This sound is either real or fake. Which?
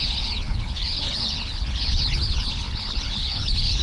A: fake